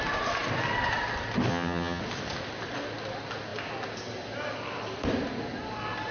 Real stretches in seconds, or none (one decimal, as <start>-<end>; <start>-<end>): 0.0-1.5; 2.0-6.1